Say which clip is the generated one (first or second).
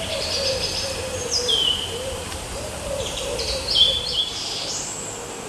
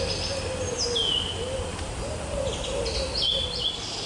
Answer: first